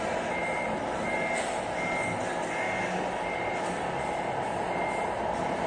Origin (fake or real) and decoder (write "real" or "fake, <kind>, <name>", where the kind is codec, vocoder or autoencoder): real